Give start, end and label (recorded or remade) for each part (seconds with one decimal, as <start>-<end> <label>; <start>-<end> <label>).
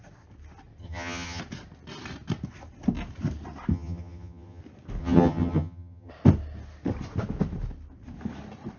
0.0-0.8 recorded; 0.8-1.4 remade; 1.4-3.7 recorded; 3.7-4.6 remade; 4.6-5.0 recorded; 5.0-6.1 remade; 6.1-8.8 recorded